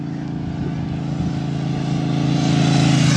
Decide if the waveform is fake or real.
real